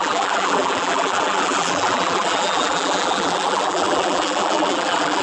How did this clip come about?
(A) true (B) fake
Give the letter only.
B